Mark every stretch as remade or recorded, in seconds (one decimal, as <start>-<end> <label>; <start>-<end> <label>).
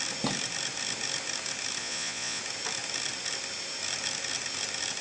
0.0-1.8 recorded; 1.8-2.4 remade; 2.4-5.0 recorded